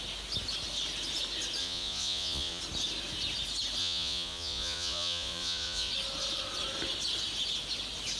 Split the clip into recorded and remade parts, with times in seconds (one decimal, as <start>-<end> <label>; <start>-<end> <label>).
0.0-1.6 recorded; 1.6-2.6 remade; 2.6-3.8 recorded; 3.8-5.9 remade; 5.9-8.2 recorded